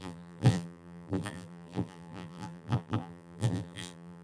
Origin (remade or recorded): remade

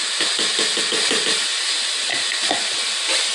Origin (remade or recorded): recorded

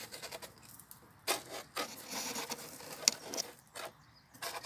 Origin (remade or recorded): recorded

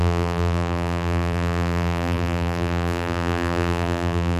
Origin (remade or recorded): remade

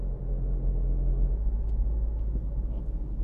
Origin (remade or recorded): recorded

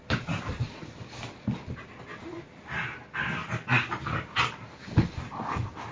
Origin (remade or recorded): recorded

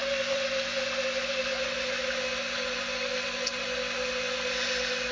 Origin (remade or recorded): recorded